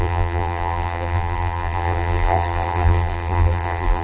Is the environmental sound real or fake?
fake